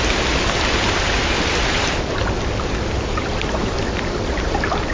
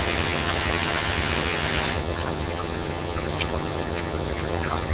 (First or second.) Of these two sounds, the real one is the first